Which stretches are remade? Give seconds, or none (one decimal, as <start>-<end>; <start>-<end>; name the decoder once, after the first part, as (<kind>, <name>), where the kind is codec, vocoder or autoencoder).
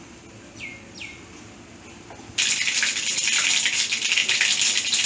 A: none